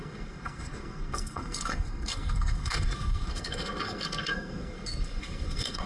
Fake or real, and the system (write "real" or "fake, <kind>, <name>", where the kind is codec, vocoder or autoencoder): fake, codec, SNAC